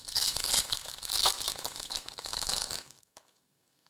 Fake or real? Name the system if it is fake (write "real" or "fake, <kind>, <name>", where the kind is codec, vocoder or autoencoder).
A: fake, codec, SNAC